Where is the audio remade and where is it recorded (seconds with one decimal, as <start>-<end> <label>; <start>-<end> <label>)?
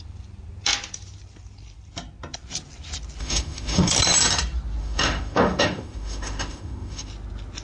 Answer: 0.0-3.2 recorded; 3.2-3.9 remade; 3.9-4.8 recorded; 4.8-7.1 remade; 7.1-7.6 recorded